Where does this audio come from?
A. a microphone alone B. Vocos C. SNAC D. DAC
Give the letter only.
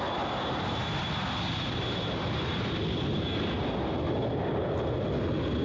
A